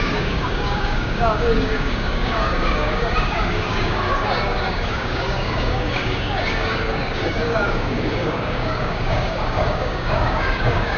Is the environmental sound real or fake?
fake